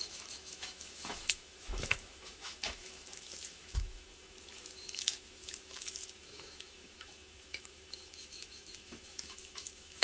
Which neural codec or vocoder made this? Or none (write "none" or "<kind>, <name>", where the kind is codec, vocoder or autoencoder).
autoencoder, DAC-VAE